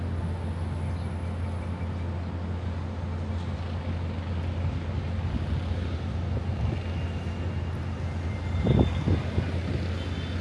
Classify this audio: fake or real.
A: real